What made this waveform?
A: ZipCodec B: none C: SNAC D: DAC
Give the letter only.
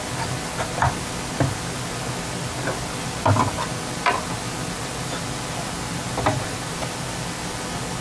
B